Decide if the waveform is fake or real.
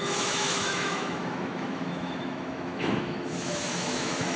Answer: fake